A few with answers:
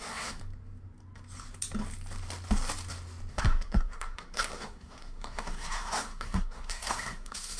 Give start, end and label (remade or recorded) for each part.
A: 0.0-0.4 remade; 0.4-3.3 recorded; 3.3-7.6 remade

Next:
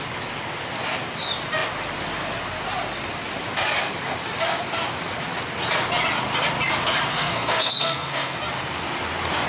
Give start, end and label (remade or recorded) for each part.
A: 0.0-7.1 recorded; 7.1-8.4 remade; 8.4-9.5 recorded

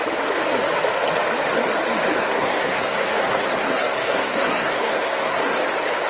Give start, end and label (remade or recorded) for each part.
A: 0.0-2.2 recorded; 2.2-5.6 remade; 5.6-6.1 recorded

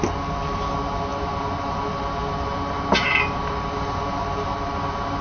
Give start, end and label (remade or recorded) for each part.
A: 0.0-5.2 recorded